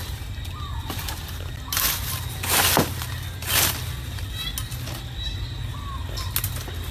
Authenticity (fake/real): real